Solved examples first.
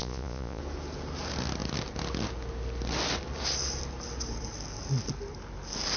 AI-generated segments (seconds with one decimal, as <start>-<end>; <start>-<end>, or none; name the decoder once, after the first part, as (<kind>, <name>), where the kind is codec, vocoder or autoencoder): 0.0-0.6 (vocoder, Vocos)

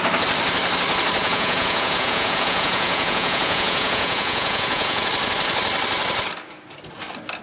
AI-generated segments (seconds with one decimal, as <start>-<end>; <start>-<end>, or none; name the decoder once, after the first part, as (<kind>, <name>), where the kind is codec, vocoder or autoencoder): 1.2-5.1 (vocoder, Vocos)

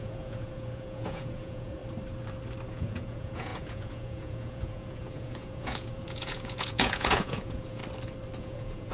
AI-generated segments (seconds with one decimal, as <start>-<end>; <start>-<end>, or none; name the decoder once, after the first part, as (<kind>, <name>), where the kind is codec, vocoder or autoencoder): 0.0-1.8 (vocoder, Vocos); 2.7-7.8; 8.4-8.9

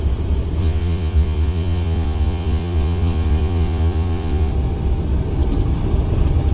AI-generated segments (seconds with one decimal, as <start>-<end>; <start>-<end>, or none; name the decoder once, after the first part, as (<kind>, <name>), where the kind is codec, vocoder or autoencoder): 0.6-4.5 (vocoder, Vocos)